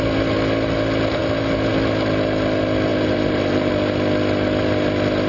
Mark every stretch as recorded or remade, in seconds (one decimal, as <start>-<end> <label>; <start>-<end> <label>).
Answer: 0.0-2.9 recorded; 2.9-3.7 remade; 3.7-5.3 recorded